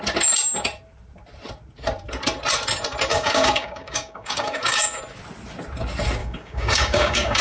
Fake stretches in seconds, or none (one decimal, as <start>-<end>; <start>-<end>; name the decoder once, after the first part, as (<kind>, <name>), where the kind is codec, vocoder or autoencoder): 3.1-5.0 (codec, DAC); 6.2-7.4